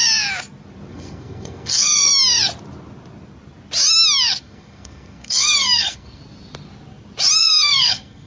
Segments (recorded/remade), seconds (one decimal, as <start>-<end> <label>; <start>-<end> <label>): 0.0-0.9 recorded; 0.9-2.1 remade; 2.1-4.4 recorded; 4.4-6.2 remade; 6.2-7.4 recorded; 7.4-8.3 remade